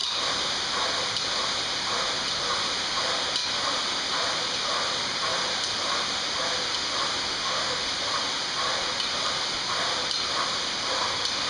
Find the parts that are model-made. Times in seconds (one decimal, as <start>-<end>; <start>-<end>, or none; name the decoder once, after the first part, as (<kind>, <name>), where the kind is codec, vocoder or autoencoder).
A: 7.3-7.9 (autoencoder, DAC-VAE)